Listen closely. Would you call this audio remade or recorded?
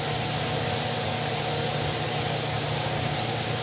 recorded